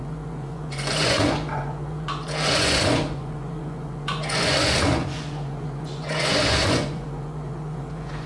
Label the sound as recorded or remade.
remade